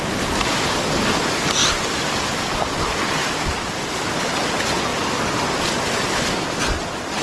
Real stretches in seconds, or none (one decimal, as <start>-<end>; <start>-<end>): 0.0-7.2